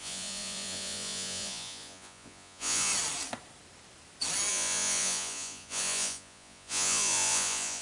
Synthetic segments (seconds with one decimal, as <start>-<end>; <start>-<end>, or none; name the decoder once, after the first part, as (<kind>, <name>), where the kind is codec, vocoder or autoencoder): 0.0-2.9 (vocoder, Vocos); 4.5-7.8